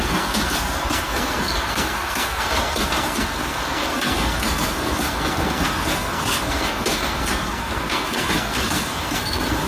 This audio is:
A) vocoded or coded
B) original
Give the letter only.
A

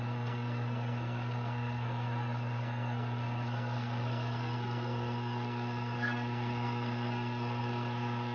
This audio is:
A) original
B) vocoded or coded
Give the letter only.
B